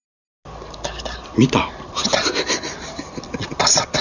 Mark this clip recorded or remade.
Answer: recorded